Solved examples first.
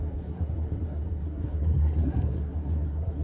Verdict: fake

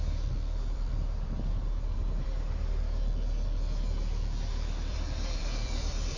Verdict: fake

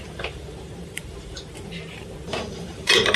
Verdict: fake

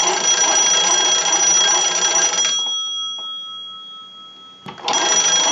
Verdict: real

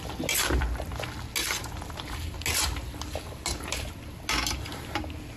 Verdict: real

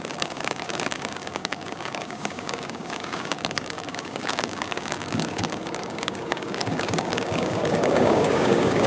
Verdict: fake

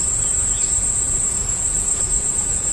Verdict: fake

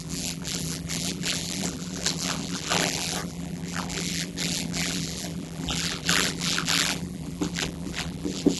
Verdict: fake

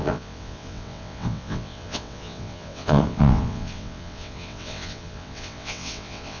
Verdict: fake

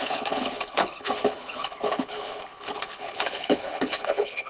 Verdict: fake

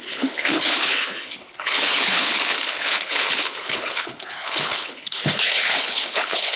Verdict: fake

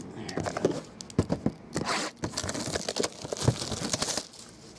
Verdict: real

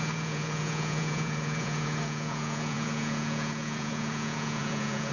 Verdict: fake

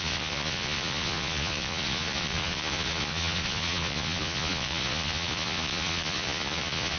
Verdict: fake